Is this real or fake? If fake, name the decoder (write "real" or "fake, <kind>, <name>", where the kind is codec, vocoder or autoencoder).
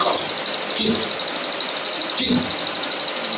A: real